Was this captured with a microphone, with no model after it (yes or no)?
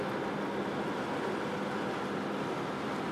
yes